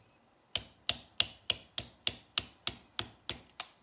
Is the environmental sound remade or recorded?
recorded